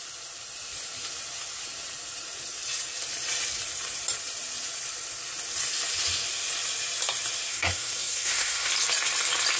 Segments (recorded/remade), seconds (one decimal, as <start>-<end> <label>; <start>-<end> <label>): 0.0-7.5 recorded; 7.5-8.7 remade; 8.7-9.6 recorded